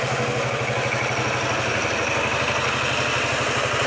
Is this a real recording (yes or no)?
yes